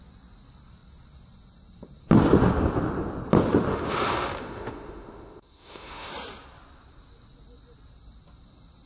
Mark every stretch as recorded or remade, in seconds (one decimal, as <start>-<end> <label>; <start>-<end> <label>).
0.0-3.7 recorded; 3.7-6.1 remade; 6.1-8.9 recorded